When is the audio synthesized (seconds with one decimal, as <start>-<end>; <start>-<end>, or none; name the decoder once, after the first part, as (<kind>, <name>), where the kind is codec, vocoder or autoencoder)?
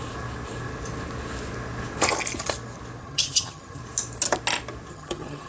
3.0-3.8 (vocoder, HiFi-GAN); 4.9-5.5